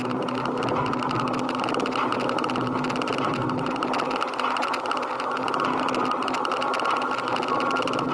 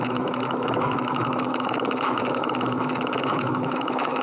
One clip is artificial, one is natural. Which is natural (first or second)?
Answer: first